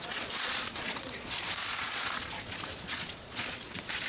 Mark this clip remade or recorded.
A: remade